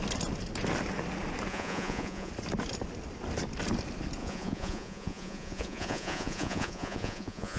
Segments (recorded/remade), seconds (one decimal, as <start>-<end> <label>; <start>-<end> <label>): 0.0-1.5 recorded; 1.5-2.3 remade; 2.3-4.2 recorded; 4.2-7.6 remade